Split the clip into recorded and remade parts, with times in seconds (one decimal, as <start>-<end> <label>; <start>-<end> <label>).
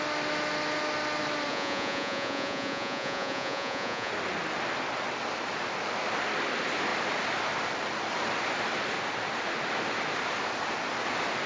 0.0-1.5 recorded; 1.5-4.1 remade; 4.1-11.5 recorded